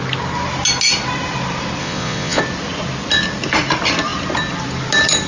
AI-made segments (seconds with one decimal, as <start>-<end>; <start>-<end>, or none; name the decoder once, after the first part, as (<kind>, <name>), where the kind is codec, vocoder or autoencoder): 1.8-2.4 (vocoder, Vocos)